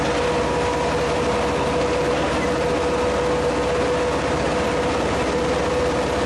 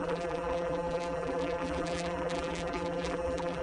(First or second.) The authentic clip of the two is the first